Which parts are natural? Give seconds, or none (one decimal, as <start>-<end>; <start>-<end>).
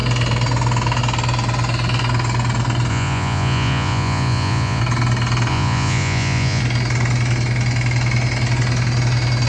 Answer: 0.0-2.9; 4.8-5.5; 6.6-9.5